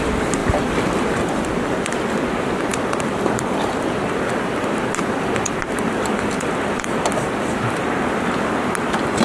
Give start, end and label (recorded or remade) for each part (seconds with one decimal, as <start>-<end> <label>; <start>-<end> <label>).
0.0-0.4 recorded; 0.4-1.7 remade; 1.7-2.7 recorded; 2.7-7.8 remade; 7.8-9.2 recorded